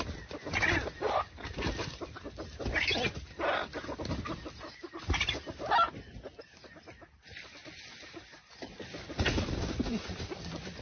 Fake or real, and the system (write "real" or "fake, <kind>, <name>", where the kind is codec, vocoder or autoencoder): real